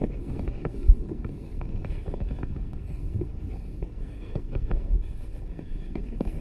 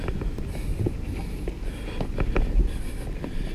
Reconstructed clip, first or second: first